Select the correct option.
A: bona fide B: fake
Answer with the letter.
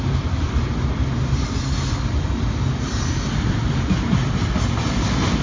A